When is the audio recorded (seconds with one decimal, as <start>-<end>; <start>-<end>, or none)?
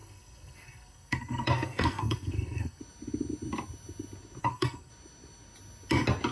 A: 2.8-4.4; 4.9-6.3